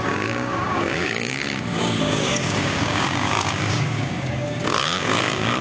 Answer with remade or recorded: remade